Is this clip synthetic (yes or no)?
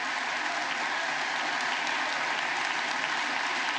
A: no